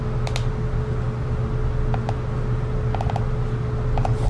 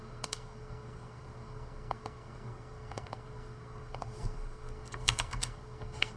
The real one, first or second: first